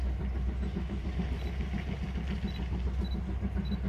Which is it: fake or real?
real